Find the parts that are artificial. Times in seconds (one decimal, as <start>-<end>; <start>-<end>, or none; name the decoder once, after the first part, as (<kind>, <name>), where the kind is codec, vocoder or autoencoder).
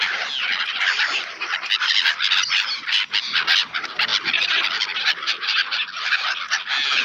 none